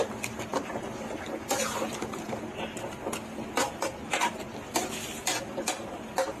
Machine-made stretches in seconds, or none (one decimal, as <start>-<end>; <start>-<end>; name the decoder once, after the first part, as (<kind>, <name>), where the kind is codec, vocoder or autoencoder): none